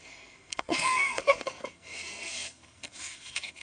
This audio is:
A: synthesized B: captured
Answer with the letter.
A